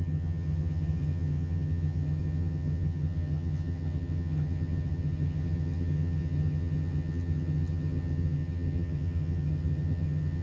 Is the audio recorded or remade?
remade